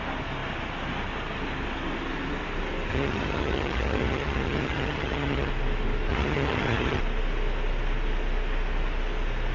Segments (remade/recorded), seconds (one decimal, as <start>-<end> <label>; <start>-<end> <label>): 0.0-2.9 recorded; 2.9-5.5 remade; 5.5-6.1 recorded; 6.1-7.0 remade; 7.0-9.5 recorded